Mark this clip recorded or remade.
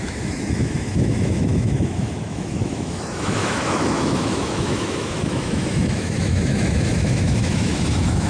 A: remade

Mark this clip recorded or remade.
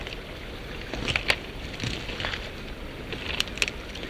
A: recorded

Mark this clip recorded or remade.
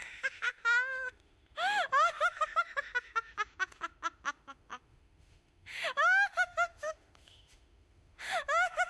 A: remade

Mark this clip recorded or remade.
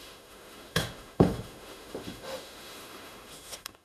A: remade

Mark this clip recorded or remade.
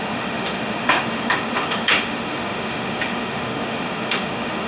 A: remade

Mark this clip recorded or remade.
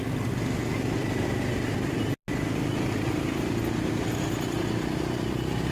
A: recorded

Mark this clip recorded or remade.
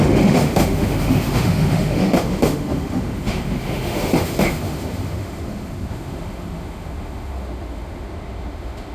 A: remade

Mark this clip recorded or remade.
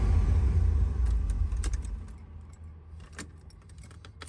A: recorded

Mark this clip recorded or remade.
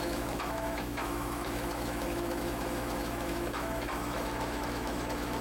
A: remade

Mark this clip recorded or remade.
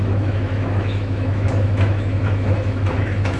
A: remade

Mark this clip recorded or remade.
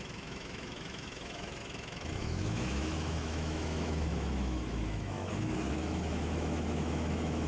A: remade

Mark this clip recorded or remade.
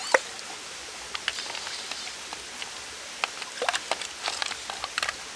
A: recorded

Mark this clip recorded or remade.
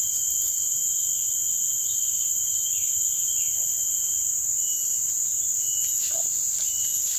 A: recorded